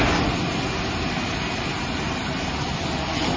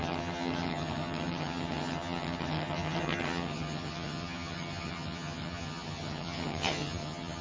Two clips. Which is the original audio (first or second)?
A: first